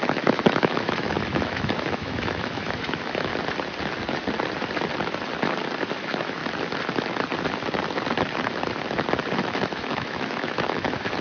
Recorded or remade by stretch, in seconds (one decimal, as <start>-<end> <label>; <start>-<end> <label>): 0.0-3.3 remade; 3.3-5.9 recorded; 5.9-6.4 remade; 6.4-9.3 recorded; 9.3-11.2 remade